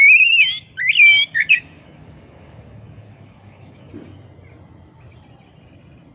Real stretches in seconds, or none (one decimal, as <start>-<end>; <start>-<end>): 0.0-1.2; 3.9-6.1